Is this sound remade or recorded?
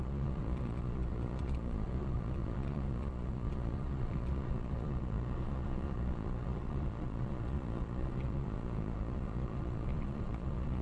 remade